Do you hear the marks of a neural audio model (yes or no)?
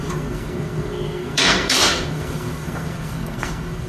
yes